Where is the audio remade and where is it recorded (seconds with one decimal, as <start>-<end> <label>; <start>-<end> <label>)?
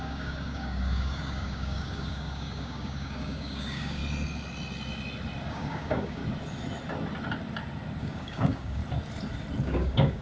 0.0-4.0 remade; 4.0-5.5 recorded; 5.5-6.2 remade; 6.2-8.0 recorded; 8.0-8.8 remade; 8.8-9.6 recorded; 9.6-10.2 remade